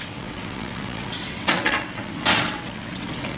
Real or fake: fake